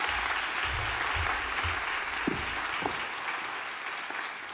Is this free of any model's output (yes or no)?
yes